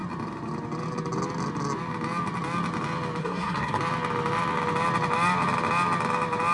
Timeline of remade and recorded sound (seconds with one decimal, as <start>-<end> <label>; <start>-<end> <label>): 0.0-3.2 recorded; 3.2-3.8 remade; 3.8-6.5 recorded